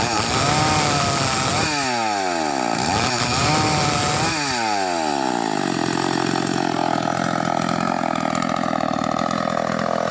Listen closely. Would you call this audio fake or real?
real